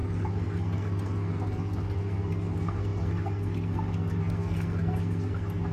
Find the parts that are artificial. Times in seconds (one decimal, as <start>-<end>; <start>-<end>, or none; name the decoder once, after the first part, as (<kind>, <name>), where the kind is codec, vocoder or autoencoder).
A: 0.0-5.7 (codec, SNAC)